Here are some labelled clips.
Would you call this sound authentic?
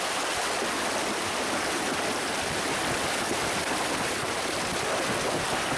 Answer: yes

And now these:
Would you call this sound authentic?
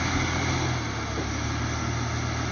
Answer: yes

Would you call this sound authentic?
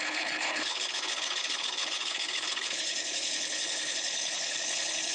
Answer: no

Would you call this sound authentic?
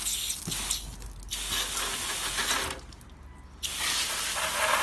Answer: yes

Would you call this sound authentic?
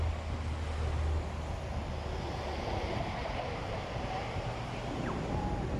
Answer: yes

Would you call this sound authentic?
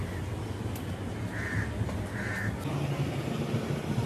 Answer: yes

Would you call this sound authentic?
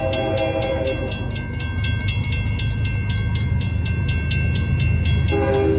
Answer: yes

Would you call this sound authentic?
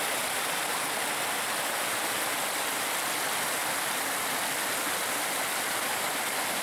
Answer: yes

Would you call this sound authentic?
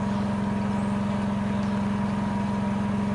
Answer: yes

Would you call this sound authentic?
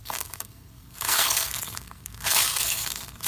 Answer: no